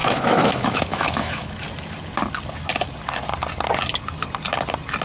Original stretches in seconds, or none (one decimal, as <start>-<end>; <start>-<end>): 1.5-5.0